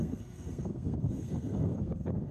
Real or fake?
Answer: fake